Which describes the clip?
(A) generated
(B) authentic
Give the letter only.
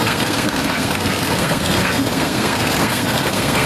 A